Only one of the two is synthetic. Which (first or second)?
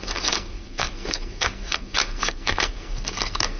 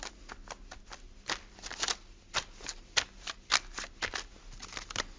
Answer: first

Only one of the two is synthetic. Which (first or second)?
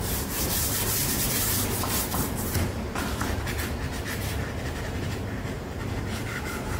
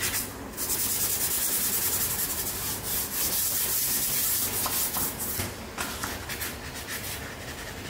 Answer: first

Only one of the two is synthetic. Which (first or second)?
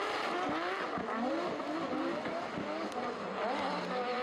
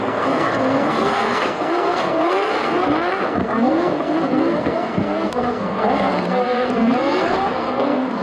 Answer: second